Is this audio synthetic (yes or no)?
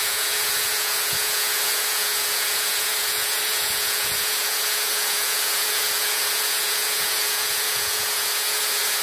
yes